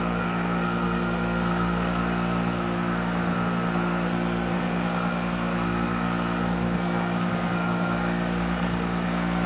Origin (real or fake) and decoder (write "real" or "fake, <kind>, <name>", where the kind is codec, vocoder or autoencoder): fake, codec, SNAC